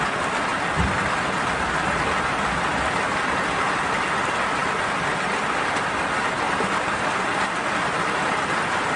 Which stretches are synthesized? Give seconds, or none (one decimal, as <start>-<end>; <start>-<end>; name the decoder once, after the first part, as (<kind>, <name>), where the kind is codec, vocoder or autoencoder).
none